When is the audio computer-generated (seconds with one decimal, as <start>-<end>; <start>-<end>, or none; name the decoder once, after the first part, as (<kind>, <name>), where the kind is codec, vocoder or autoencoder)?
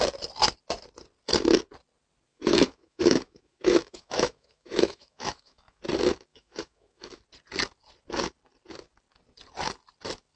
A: 2.3-5.8 (autoencoder, DAC-VAE); 6.3-7.2